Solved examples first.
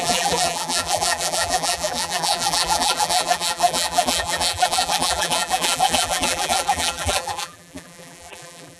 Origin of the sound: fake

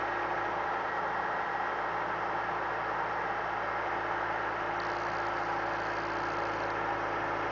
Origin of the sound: real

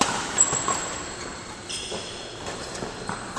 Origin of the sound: fake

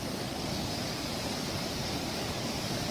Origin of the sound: fake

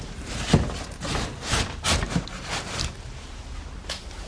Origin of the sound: fake